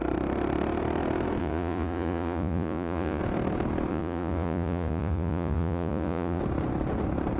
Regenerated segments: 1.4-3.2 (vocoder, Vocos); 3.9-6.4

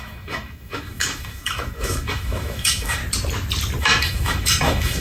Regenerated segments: 0.0-3.0 (autoencoder, DAC-VAE); 3.8-5.0